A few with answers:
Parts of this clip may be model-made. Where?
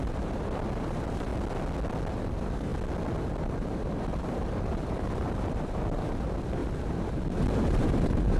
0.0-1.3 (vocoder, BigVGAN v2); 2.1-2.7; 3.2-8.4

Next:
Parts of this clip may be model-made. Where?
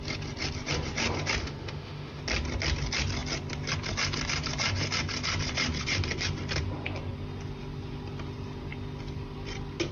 1.4-2.2 (autoencoder, DAC-VAE)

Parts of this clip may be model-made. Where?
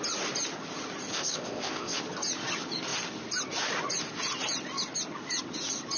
1.1-2.0 (codec, ZipCodec)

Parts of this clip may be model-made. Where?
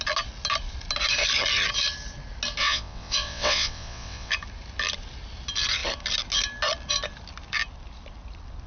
2.6-4.3 (vocoder, WaveNeXt)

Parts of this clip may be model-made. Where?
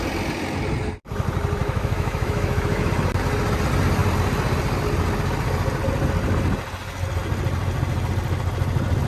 1.6-2.9 (autoencoder, DAC-VAE)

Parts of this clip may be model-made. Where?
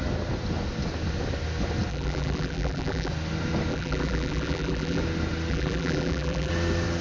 1.9-3.1 (vocoder, BigVGAN v2); 3.7-5.0; 5.5-6.5